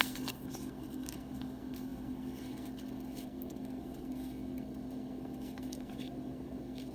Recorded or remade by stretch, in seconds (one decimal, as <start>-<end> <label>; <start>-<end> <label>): 0.0-6.9 remade